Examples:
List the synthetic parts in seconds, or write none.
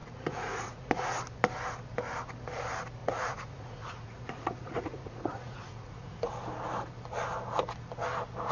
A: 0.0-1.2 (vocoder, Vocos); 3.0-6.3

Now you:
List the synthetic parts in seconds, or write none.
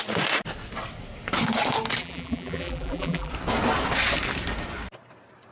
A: 2.0-3.3 (vocoder, BigVGAN v2)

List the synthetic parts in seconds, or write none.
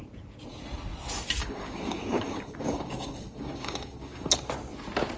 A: 1.4-4.3 (codec, DAC)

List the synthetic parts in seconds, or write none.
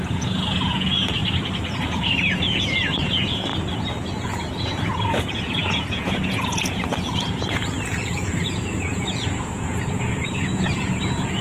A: 0.0-1.2 (vocoder, Vocos); 1.8-3.5; 4.2-11.4